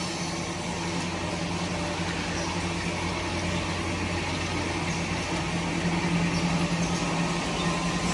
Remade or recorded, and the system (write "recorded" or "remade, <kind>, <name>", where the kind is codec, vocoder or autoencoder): recorded